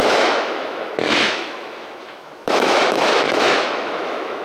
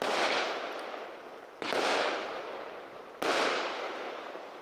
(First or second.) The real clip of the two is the second